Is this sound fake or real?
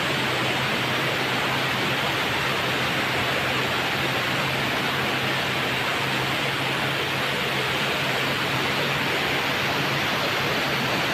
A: real